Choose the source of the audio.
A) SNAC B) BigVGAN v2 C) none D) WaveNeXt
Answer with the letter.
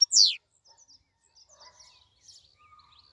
C